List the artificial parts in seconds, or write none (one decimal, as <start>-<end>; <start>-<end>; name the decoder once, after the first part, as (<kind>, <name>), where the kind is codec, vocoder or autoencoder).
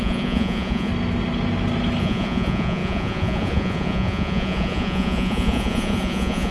0.0-0.9 (vocoder, Vocos); 2.0-6.5